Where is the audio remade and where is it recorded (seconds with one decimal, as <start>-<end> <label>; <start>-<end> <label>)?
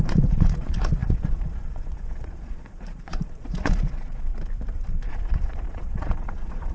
0.0-4.3 remade; 4.3-5.1 recorded; 5.1-6.7 remade